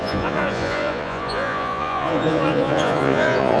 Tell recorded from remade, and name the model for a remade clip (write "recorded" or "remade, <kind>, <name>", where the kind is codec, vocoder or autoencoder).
remade, vocoder, Vocos